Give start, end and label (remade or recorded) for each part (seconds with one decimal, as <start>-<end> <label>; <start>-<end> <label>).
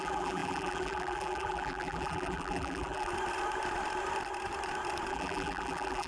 0.0-3.1 remade; 3.1-5.1 recorded; 5.1-6.1 remade